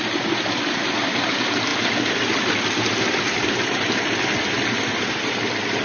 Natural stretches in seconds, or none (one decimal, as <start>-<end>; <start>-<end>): 0.0-5.8